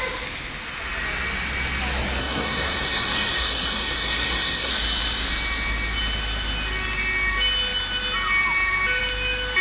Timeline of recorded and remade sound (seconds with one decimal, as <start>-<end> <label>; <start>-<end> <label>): 0.0-2.2 recorded; 2.2-4.7 remade; 4.7-9.6 recorded